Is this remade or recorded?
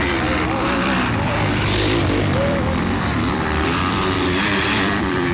remade